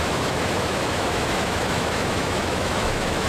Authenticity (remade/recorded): remade